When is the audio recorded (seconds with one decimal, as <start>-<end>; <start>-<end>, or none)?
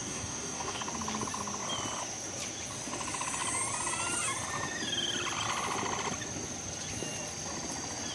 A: 0.8-8.1